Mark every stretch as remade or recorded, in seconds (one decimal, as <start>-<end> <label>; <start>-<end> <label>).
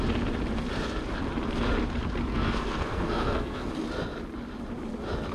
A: 0.0-2.3 recorded; 2.3-3.7 remade; 3.7-5.3 recorded